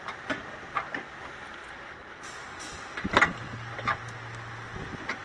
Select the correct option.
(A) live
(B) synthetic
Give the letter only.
A